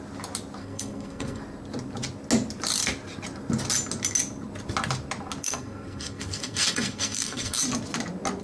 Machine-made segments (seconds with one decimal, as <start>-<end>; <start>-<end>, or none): 0.6-1.4; 5.4-7.6